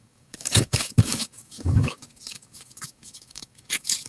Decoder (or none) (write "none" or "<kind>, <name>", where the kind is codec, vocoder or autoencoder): codec, DAC